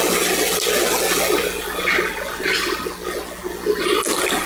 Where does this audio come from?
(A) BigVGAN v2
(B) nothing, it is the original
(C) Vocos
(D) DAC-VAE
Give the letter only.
B